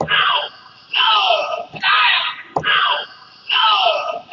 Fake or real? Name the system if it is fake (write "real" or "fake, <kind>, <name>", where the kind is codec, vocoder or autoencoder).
real